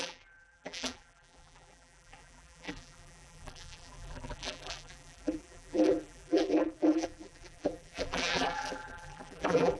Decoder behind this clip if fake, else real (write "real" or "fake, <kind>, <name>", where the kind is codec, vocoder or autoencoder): fake, vocoder, BigVGAN v2